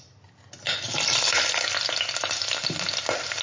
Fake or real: real